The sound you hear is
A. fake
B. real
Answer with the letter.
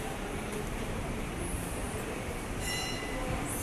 A